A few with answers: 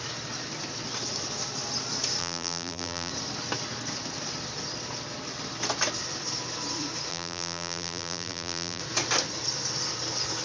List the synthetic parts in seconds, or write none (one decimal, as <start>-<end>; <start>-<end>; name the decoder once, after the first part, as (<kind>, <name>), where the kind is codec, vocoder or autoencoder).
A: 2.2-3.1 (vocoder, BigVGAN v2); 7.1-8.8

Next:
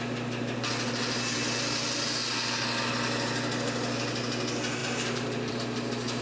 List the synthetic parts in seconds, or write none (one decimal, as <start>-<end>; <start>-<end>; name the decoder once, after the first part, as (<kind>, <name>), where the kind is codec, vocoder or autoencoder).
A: none

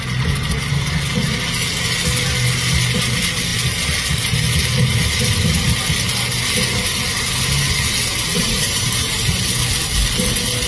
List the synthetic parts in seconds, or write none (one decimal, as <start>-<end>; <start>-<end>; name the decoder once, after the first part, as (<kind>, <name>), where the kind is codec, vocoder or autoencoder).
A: 8.3-9.2 (vocoder, BigVGAN v2)